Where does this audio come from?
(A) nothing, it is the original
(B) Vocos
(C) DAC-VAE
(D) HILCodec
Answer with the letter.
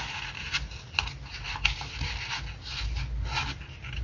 A